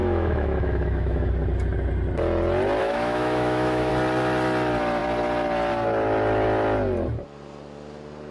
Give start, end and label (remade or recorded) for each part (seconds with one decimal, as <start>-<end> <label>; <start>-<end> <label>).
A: 0.0-1.3 remade; 1.3-2.8 recorded; 2.8-3.9 remade; 3.9-8.3 recorded